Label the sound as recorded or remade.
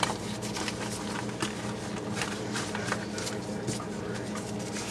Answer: recorded